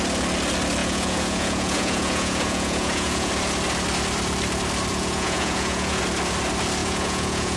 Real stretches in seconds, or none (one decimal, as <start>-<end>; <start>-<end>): 0.0-0.8; 3.3-4.9; 6.0-6.8